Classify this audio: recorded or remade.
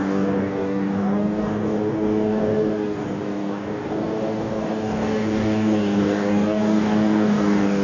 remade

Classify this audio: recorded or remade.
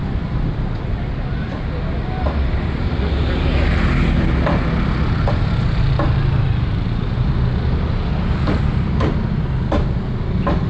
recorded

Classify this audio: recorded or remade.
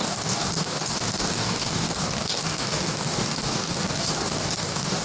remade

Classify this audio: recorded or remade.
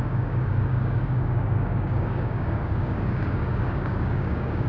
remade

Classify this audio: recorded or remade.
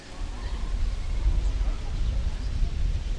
recorded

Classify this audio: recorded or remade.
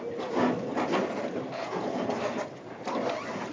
recorded